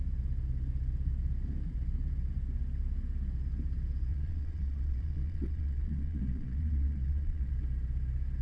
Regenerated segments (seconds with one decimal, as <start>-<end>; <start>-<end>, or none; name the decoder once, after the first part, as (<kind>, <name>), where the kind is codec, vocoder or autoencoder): 4.1-7.5 (vocoder, Vocos)